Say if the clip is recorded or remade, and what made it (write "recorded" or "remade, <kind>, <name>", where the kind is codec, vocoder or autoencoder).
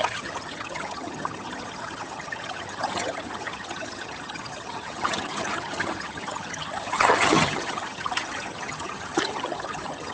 remade, vocoder, HiFi-GAN